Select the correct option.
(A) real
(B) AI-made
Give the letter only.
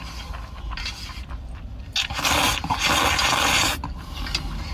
A